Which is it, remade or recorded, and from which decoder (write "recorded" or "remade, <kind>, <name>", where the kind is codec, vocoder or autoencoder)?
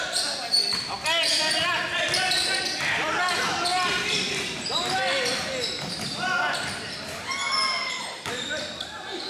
recorded